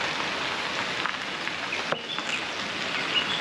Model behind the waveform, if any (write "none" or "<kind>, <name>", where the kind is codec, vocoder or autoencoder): none